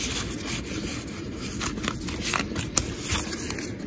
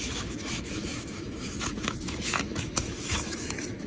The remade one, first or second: second